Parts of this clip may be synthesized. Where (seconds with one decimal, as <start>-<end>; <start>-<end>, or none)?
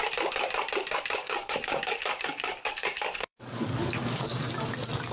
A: 1.2-4.3